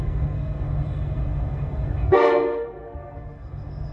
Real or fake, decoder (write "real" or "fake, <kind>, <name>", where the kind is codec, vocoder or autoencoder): fake, codec, SNAC